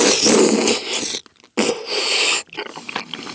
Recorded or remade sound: recorded